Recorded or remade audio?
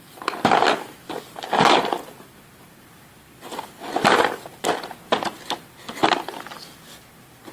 recorded